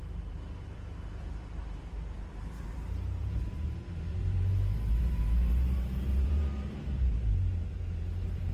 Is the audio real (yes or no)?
no